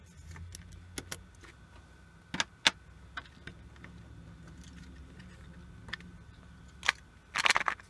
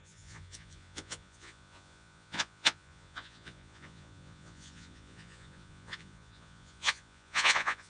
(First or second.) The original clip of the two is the first